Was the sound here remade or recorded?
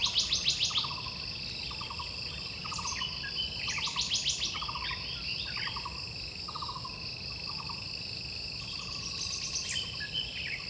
recorded